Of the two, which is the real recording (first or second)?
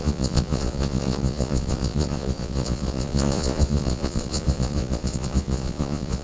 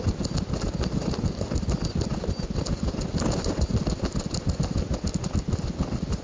second